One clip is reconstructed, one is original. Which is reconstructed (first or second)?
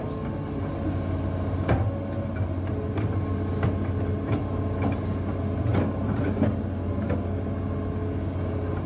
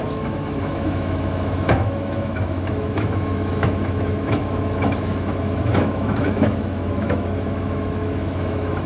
second